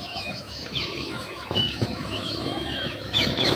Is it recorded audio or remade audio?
remade